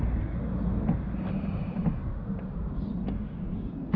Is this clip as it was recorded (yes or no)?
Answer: yes